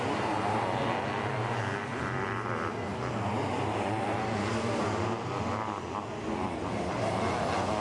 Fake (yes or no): no